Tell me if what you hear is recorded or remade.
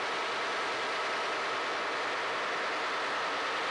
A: recorded